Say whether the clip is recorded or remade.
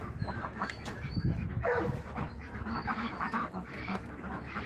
remade